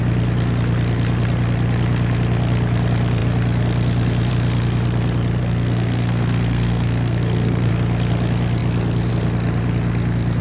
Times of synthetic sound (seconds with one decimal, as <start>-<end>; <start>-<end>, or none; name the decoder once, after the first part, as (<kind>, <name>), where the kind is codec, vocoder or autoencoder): 5.4-7.7 (codec, SNAC)